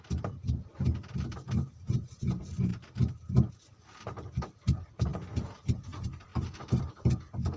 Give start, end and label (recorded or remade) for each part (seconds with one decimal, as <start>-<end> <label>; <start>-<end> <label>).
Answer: 0.0-7.6 recorded

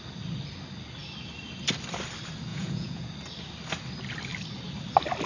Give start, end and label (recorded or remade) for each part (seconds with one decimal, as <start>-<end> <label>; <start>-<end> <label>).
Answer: 0.0-2.5 recorded; 2.5-3.1 remade; 3.1-5.3 recorded

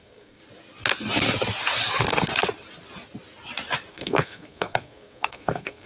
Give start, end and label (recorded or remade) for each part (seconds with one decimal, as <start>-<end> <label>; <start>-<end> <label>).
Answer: 0.0-0.4 remade; 0.4-3.9 recorded; 3.9-5.9 remade

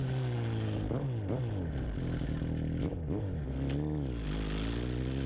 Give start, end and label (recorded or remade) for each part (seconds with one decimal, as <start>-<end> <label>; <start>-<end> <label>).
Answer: 0.0-5.3 recorded

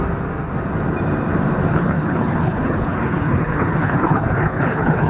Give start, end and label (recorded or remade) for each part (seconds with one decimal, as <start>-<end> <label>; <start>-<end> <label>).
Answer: 0.0-1.7 recorded; 1.7-5.1 remade

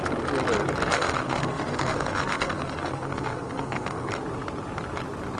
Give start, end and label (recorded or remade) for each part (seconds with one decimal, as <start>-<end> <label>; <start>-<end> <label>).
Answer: 0.0-0.9 recorded; 0.9-4.1 remade; 4.1-5.4 recorded

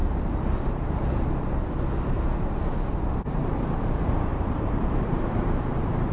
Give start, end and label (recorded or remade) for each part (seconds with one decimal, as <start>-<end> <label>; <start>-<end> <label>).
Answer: 0.0-0.6 recorded; 0.6-1.0 remade; 1.0-3.3 recorded; 3.3-6.1 remade

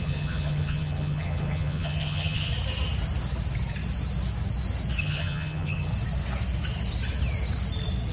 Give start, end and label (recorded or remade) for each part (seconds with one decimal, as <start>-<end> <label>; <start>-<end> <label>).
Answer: 0.0-2.5 remade; 2.5-5.0 recorded; 5.0-5.9 remade; 5.9-8.1 recorded